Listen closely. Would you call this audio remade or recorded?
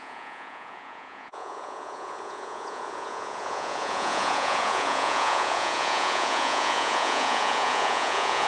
remade